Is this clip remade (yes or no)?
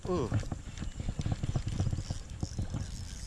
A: no